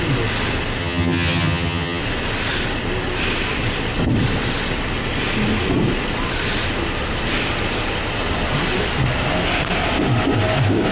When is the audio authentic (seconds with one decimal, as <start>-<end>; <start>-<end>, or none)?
0.0-0.8; 2.0-10.9